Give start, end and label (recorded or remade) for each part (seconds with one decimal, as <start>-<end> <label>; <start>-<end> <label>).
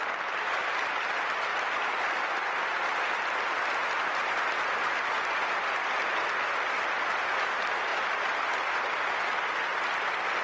0.0-10.4 recorded